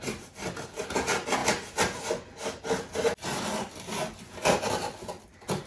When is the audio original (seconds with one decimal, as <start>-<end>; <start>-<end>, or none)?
0.0-5.7